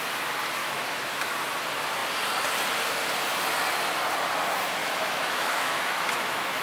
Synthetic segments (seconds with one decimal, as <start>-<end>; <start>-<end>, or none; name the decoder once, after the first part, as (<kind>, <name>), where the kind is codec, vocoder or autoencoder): 0.6-1.3 (autoencoder, DAC-VAE); 4.8-6.6